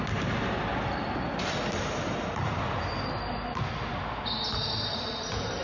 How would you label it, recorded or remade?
recorded